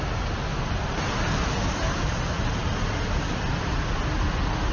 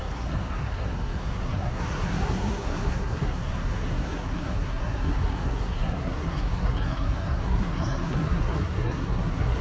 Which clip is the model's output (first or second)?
second